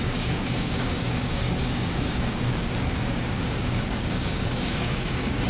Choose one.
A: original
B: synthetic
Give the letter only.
B